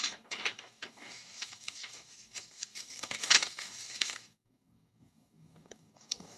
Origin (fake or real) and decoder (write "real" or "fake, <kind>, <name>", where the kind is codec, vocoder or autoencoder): fake, codec, DAC